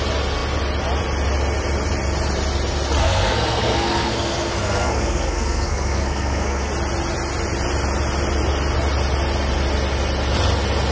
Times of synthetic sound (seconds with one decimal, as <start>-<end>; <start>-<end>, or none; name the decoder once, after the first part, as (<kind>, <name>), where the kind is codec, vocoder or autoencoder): 3.0-6.7 (codec, SNAC)